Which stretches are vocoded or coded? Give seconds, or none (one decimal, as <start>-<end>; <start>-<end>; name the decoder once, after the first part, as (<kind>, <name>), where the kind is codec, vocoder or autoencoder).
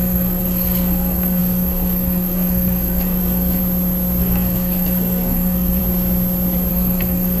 0.0-3.6 (codec, SNAC); 4.2-5.8; 6.7-7.4